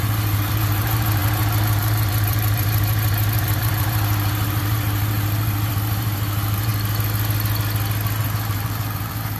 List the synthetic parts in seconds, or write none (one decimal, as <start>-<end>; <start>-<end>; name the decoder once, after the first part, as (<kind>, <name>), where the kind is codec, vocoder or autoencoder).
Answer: 0.0-6.7 (vocoder, BigVGAN v2); 8.2-9.4